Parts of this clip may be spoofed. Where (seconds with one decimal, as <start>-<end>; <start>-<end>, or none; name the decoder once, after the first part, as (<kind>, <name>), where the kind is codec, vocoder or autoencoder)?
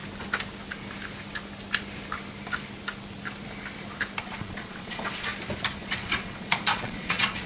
4.2-5.3 (vocoder, Vocos); 5.8-7.5